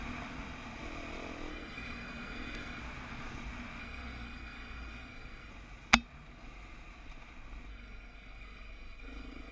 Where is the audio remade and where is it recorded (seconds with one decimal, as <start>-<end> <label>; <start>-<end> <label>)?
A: 0.0-1.5 recorded; 1.5-2.8 remade; 2.8-3.8 recorded; 3.8-5.5 remade; 5.5-7.7 recorded; 7.7-9.5 remade